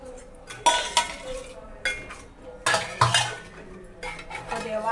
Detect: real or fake real